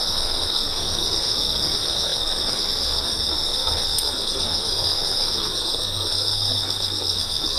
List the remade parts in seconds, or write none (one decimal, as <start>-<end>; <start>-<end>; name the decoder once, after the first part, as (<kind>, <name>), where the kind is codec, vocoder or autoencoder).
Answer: 0.0-7.6 (codec, SNAC)